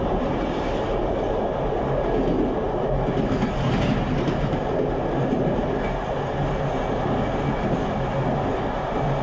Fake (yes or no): no